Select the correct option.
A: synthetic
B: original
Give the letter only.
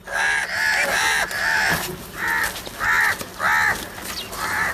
B